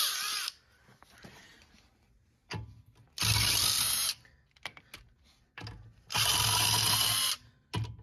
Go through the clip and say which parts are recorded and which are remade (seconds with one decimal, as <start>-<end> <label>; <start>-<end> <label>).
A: 0.0-8.0 recorded